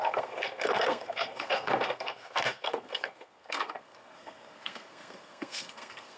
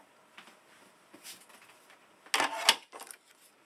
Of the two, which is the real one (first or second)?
second